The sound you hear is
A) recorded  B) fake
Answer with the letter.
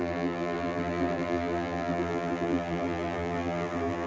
B